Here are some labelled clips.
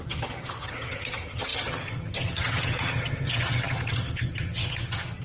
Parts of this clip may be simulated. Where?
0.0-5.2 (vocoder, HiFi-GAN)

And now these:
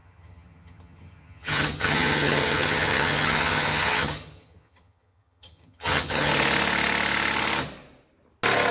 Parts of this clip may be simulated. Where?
0.0-6.3 (vocoder, HiFi-GAN)

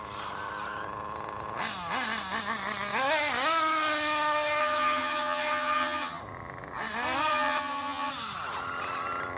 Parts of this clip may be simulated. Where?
4.6-6.2 (vocoder, HiFi-GAN); 7.3-8.1

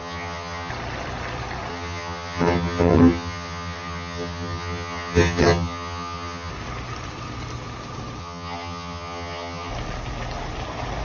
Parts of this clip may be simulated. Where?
0.0-0.7 (vocoder, HiFi-GAN); 1.7-6.5; 8.2-9.7

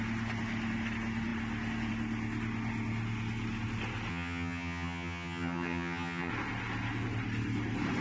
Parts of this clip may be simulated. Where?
4.1-6.3 (vocoder, HiFi-GAN)

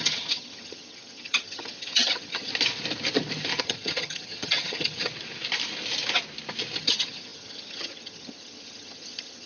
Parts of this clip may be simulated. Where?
0.0-2.5 (vocoder, HiFi-GAN); 3.6-5.1; 6.8-9.5

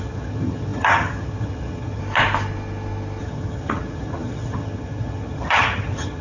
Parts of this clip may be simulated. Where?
0.0-2.0 (vocoder, HiFi-GAN); 3.2-6.2

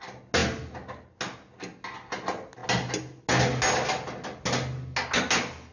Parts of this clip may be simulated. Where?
none